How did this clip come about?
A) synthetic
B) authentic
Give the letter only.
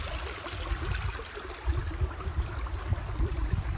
B